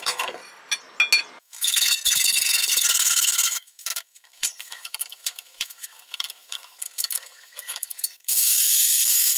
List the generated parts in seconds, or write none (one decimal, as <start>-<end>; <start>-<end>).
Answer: 0.0-0.4; 1.4-9.4